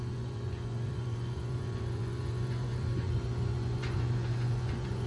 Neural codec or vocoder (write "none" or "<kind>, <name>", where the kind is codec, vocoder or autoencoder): vocoder, Vocos